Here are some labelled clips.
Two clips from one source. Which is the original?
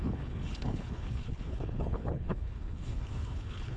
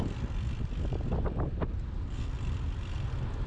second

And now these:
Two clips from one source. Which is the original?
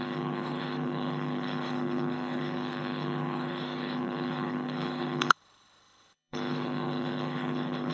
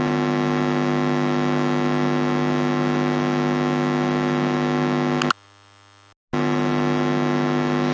second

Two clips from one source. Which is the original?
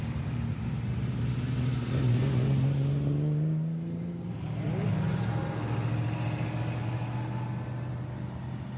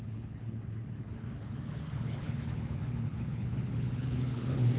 first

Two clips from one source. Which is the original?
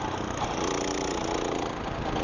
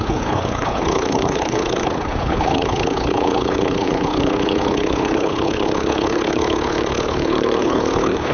first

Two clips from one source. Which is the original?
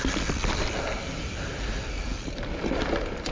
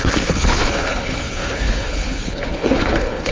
first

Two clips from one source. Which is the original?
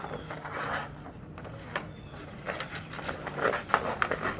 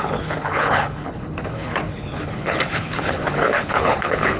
first